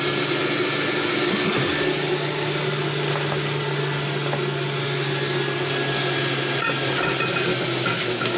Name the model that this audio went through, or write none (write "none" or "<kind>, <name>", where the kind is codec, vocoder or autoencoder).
none